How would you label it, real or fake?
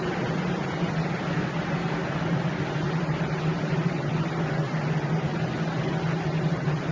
real